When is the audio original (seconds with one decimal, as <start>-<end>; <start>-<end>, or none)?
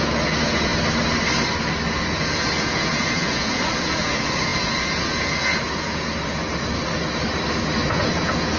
0.7-1.9; 6.4-7.9